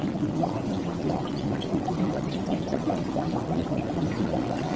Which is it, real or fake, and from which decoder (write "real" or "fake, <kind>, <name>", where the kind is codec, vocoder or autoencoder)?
fake, vocoder, WaveNeXt